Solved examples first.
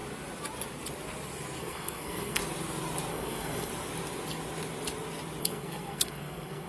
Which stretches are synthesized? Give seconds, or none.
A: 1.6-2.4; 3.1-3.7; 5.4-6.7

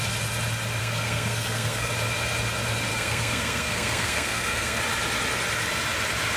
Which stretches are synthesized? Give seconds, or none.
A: 0.8-1.9; 2.9-4.8

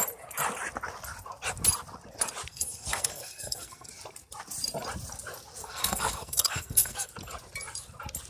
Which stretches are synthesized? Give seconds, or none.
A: 2.5-3.9; 5.6-7.1

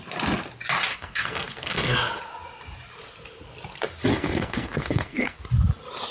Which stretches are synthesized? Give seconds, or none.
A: 0.9-2.2; 4.1-5.4

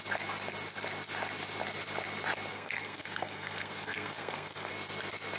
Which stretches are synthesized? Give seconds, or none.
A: 2.5-4.7

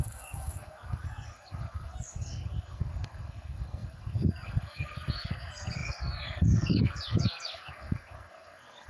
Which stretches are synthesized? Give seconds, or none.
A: 0.0-8.9

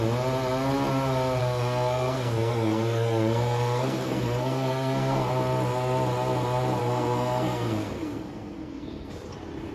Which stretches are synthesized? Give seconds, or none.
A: 1.4-5.3; 6.8-9.1

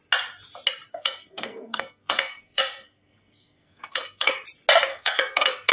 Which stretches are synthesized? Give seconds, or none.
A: 0.9-4.3; 4.9-5.7